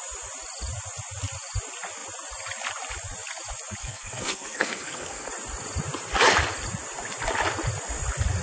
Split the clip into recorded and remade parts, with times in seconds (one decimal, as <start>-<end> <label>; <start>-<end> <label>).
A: 0.0-3.8 recorded; 3.8-5.3 remade; 5.3-8.4 recorded